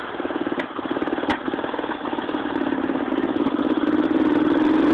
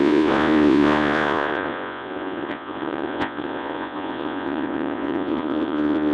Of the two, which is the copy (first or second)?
second